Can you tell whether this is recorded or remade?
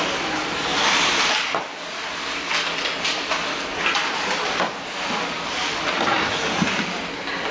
recorded